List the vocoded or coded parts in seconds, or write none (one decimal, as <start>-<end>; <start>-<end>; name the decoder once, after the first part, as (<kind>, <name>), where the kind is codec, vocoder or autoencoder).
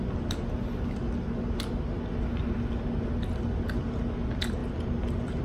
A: none